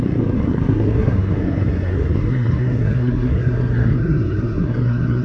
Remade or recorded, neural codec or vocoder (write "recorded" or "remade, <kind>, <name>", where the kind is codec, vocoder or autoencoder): remade, codec, SNAC